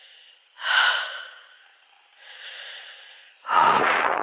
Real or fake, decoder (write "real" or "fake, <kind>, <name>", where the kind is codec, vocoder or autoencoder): fake, vocoder, Vocos